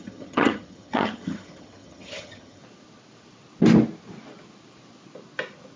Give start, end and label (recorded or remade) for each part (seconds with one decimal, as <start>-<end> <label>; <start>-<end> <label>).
0.0-2.6 remade; 2.6-5.8 recorded